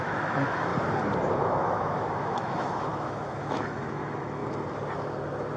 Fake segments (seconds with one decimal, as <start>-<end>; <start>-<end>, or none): 0.0-0.7; 1.3-4.4